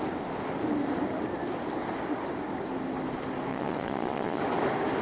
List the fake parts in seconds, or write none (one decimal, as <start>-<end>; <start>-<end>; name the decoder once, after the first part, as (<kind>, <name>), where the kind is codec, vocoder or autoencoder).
3.5-4.4 (vocoder, Vocos)